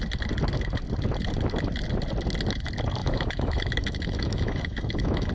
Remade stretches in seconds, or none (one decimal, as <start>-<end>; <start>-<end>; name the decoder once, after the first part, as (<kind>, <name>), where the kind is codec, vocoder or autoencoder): 3.0-5.3 (autoencoder, DAC-VAE)